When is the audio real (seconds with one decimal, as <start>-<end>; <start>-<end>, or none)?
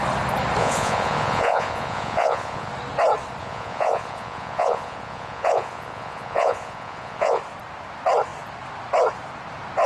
0.0-0.6; 2.7-3.4; 7.4-9.9